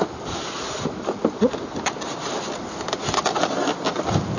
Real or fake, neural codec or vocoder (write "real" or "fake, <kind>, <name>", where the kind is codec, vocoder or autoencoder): real